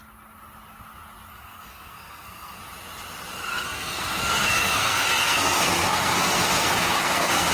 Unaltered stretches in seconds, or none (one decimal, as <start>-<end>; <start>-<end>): 0.0-1.3; 2.6-3.5

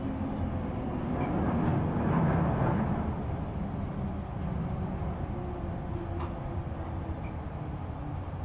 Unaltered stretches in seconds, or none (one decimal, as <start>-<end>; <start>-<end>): 0.0-8.4

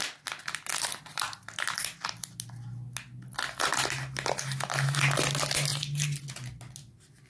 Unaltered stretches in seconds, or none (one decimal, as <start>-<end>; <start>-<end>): 0.0-7.3

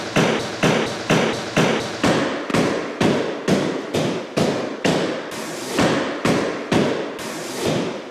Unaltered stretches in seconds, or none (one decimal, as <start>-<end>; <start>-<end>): 0.0-8.1